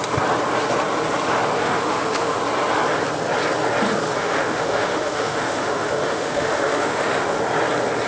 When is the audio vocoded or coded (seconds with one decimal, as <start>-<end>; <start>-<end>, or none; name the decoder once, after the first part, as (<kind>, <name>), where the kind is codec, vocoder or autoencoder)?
1.6-2.4 (autoencoder, DAC-VAE); 4.2-7.4